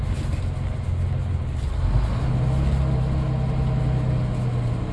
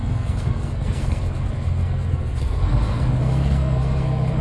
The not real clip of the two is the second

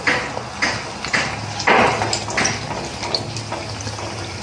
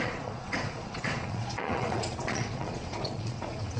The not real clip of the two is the second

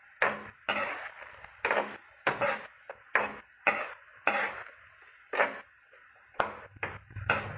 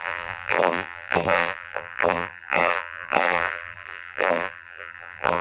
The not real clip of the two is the second